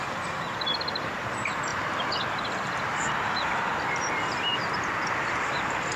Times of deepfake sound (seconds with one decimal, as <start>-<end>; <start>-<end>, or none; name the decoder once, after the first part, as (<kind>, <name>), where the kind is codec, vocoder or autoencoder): 0.0-1.2 (vocoder, BigVGAN v2); 1.7-3.0; 4.5-6.0